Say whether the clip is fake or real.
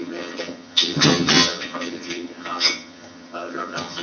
fake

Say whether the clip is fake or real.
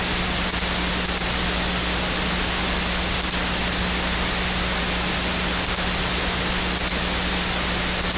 real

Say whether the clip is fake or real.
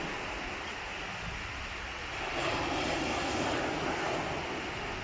real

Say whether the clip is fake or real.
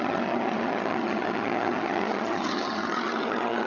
fake